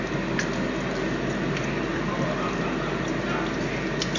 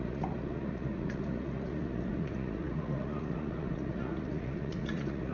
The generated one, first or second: second